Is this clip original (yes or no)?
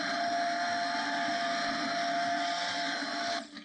yes